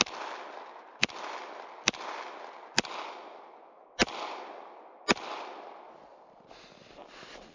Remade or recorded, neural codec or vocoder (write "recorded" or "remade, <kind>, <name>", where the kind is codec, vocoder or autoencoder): recorded